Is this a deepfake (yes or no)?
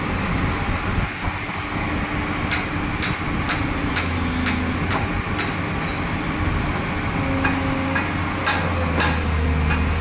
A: no